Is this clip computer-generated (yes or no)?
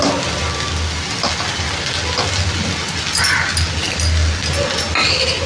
no